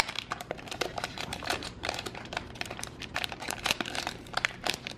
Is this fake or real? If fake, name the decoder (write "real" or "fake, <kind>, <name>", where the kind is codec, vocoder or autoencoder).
fake, vocoder, BigVGAN v2